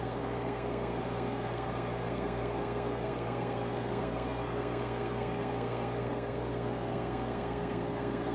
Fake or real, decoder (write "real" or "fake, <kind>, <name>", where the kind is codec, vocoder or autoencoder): fake, codec, SNAC